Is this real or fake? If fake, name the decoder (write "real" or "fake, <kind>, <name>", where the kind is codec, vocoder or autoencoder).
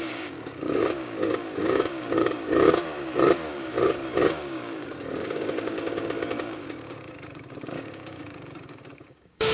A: fake, codec, DAC